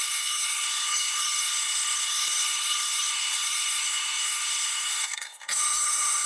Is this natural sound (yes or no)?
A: no